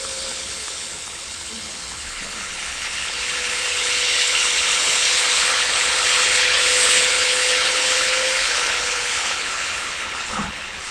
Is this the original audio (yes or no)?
no